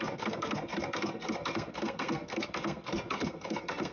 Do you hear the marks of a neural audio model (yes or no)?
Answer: yes